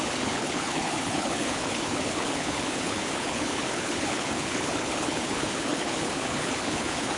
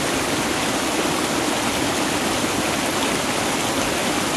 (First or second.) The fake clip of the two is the first